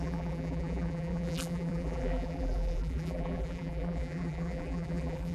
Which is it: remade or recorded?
remade